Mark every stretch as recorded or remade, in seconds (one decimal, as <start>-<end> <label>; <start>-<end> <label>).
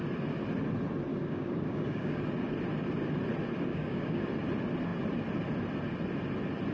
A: 0.0-1.1 recorded; 1.1-2.2 remade; 2.2-3.7 recorded; 3.7-4.2 remade; 4.2-6.7 recorded